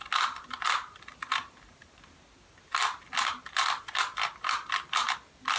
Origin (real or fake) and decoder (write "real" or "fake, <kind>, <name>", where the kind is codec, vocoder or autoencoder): real